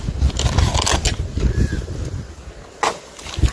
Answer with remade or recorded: recorded